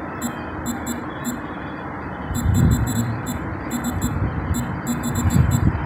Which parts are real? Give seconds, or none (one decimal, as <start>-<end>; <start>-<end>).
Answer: 0.0-1.0; 4.0-4.9

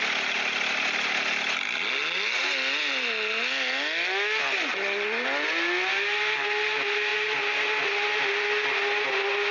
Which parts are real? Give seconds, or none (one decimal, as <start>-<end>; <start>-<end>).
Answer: 0.0-9.5

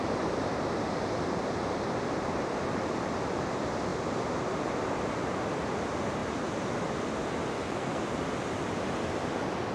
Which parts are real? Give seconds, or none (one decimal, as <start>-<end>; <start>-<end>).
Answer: 0.0-7.5; 8.0-9.7

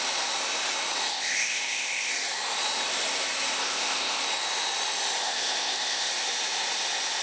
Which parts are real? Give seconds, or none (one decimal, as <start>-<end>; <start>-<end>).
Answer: 0.0-1.1; 2.1-3.6; 4.2-5.2; 6.1-7.2

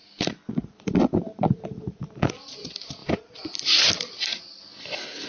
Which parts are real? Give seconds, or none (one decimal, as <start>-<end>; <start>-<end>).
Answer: 0.0-5.3

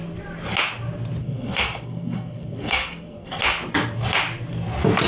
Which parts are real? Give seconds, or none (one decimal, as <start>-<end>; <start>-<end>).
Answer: 0.0-1.2; 3.4-5.1

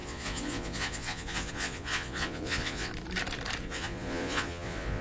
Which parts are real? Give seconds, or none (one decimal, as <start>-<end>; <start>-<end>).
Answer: 2.9-3.6

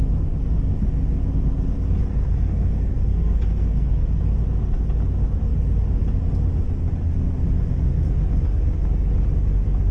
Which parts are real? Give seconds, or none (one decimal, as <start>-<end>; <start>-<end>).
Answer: 0.0-2.1; 4.2-9.9